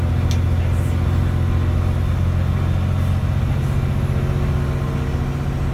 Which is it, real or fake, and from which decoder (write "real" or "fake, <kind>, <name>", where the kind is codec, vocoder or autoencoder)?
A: real